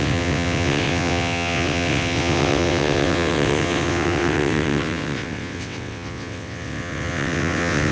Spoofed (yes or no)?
yes